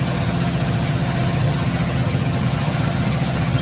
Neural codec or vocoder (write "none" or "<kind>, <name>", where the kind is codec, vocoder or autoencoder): vocoder, HiFi-GAN